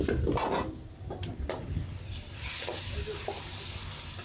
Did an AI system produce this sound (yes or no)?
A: no